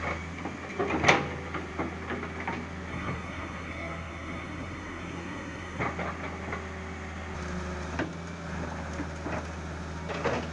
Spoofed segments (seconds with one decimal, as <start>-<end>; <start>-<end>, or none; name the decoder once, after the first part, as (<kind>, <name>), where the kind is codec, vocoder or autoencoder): 2.9-5.8 (codec, SNAC)